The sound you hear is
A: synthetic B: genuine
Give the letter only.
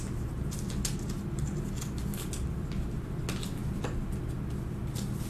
B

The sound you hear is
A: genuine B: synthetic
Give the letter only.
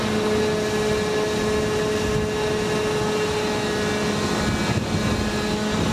A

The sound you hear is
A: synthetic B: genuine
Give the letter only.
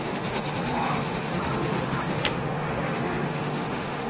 A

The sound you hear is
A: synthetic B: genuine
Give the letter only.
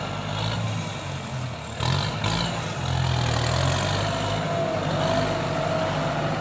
B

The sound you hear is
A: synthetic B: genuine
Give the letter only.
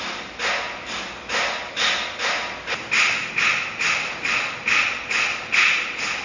B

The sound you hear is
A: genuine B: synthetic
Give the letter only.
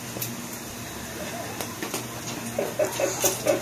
A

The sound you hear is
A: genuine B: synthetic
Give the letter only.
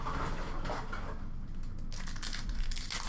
A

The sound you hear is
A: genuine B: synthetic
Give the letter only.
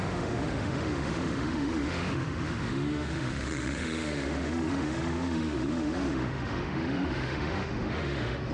B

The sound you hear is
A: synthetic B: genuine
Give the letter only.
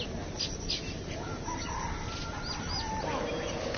B